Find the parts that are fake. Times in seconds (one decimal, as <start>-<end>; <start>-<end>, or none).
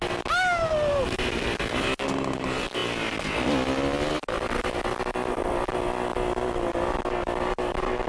none